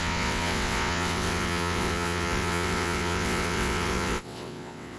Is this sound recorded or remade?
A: remade